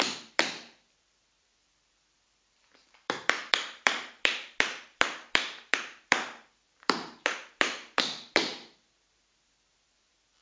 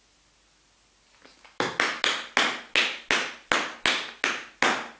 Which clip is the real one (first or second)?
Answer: second